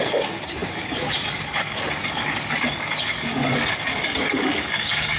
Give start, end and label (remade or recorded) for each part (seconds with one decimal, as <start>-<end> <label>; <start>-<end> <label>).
0.0-5.2 remade